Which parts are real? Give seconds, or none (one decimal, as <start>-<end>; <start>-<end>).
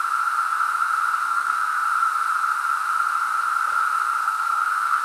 0.0-1.2; 1.8-4.1